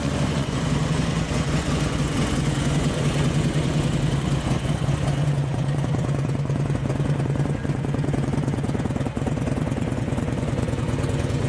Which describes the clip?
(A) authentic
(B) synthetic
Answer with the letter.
B